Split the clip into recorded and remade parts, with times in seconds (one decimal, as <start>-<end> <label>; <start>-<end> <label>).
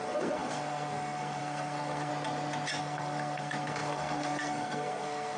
0.0-2.1 remade; 2.1-2.8 recorded; 2.8-5.4 remade